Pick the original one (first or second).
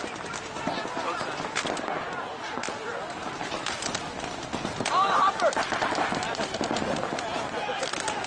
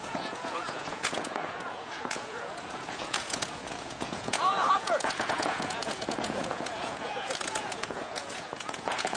first